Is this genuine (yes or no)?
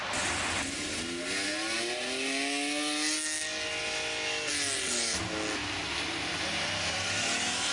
yes